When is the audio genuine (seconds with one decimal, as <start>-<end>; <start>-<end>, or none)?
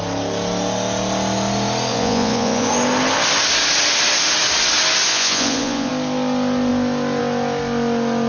0.0-1.9; 2.7-5.1; 5.9-8.3